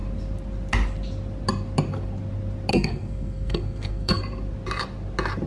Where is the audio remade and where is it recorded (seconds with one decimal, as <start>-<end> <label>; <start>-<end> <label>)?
0.0-2.7 recorded; 2.7-4.2 remade; 4.2-5.5 recorded